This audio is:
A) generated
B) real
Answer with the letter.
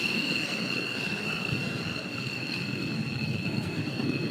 A